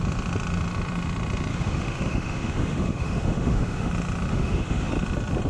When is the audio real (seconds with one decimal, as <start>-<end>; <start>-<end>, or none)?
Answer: 0.0-1.5; 3.9-4.3; 4.9-5.5